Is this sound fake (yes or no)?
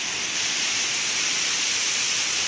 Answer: no